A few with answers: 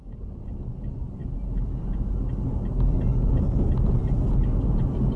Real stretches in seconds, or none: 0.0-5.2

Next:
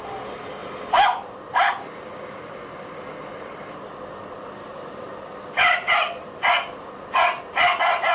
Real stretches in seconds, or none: 0.0-8.1

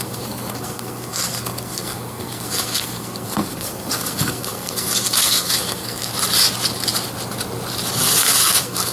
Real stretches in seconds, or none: 6.1-8.2

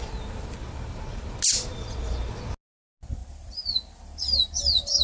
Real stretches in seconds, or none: 0.0-5.0

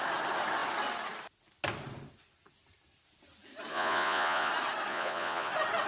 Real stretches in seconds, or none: 0.0-3.7; 4.5-4.9; 5.5-5.9

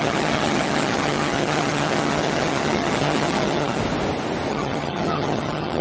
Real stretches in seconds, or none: 3.8-4.5